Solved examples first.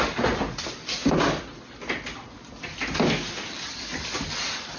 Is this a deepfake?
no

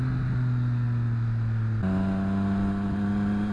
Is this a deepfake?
no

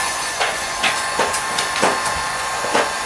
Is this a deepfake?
yes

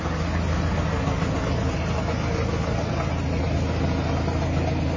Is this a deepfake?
no